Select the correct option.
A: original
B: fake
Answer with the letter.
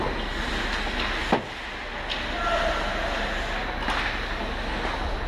A